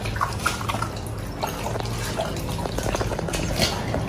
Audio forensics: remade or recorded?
recorded